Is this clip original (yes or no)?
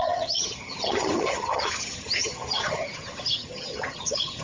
no